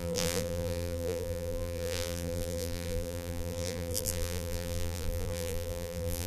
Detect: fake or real fake